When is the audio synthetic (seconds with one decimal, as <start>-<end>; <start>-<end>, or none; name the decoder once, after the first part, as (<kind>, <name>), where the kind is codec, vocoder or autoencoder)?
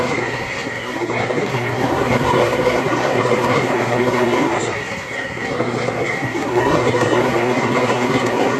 0.0-8.6 (codec, SNAC)